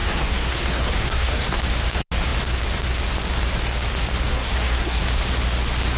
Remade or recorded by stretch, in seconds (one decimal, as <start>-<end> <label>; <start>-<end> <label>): 0.0-1.6 remade; 1.6-4.3 recorded; 4.3-5.0 remade; 5.0-6.0 recorded